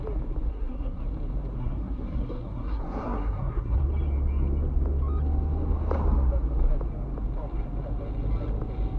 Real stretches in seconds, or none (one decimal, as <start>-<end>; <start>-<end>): 0.0-0.5; 1.0-1.6; 3.8-9.0